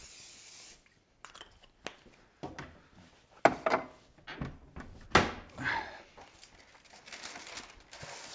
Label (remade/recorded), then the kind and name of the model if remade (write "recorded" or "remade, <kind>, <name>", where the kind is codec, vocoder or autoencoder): recorded